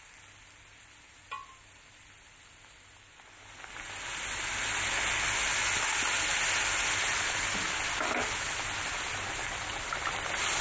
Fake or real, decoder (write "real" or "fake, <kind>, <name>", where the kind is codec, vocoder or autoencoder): real